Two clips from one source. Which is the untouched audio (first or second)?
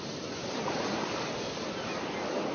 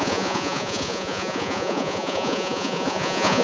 first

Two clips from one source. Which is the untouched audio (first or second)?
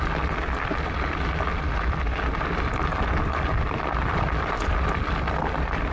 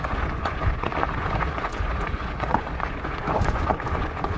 first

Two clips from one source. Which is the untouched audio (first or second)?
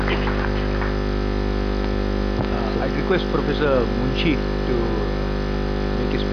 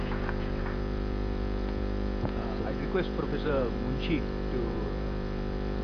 first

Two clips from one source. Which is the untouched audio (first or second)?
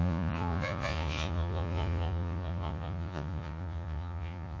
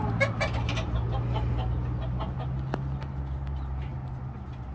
second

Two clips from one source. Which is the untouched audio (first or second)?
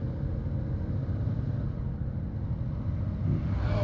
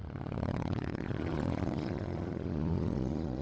first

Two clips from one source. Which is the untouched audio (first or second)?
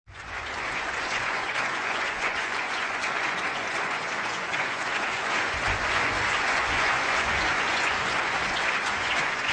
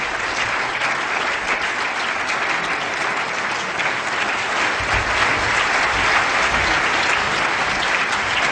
second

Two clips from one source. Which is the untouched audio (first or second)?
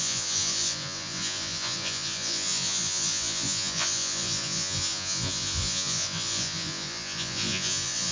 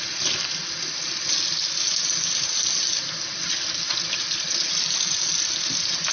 second